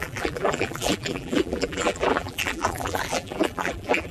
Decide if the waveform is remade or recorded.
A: remade